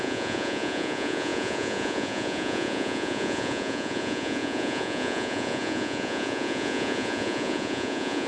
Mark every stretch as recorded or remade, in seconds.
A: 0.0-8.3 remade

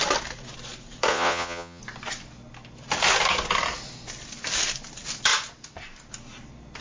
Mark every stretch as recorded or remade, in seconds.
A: 0.0-1.1 recorded; 1.1-1.8 remade; 1.8-6.8 recorded